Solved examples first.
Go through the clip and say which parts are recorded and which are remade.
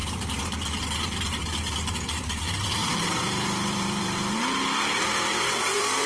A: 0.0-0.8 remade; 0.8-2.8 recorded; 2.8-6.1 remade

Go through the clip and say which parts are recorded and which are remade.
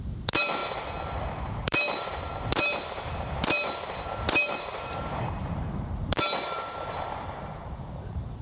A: 0.0-0.6 remade; 0.6-1.4 recorded; 1.4-8.4 remade